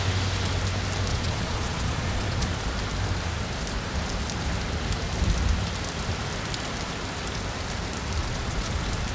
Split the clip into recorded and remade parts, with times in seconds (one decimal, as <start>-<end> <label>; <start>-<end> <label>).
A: 0.0-1.1 recorded; 1.1-2.6 remade; 2.6-8.2 recorded; 8.2-8.7 remade; 8.7-9.1 recorded

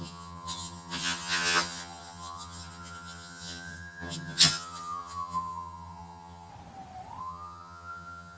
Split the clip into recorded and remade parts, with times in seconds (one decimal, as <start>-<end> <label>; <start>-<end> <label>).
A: 0.0-6.5 remade; 6.5-7.2 recorded; 7.2-8.4 remade